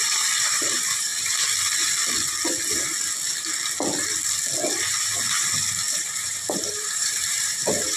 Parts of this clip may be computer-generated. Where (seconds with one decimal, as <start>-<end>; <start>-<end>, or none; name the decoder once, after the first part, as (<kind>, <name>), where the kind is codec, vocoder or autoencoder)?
0.0-1.1 (vocoder, BigVGAN v2); 5.9-8.0